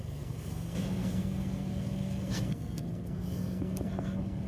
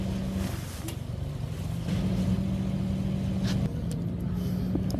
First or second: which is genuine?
second